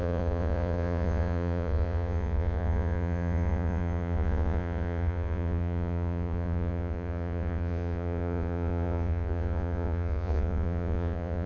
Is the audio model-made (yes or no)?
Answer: yes